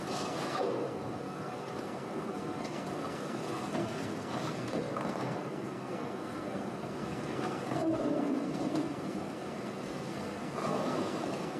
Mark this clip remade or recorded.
remade